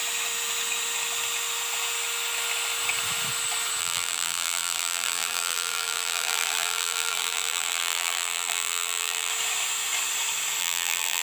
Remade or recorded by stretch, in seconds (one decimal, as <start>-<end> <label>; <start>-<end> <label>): 0.0-3.8 recorded; 3.8-9.3 remade; 9.3-10.6 recorded; 10.6-11.2 remade